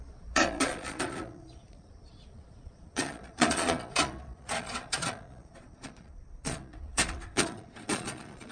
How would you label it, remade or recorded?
remade